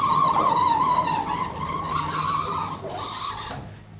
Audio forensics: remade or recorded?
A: recorded